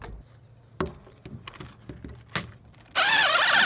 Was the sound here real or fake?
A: real